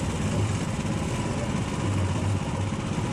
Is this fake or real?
real